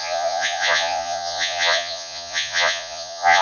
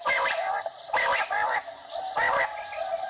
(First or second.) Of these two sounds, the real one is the second